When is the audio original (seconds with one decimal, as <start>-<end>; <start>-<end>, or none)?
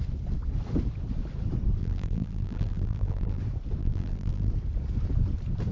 0.0-1.8; 3.4-3.8; 4.5-5.7